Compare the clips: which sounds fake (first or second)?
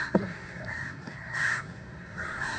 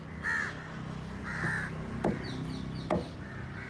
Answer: first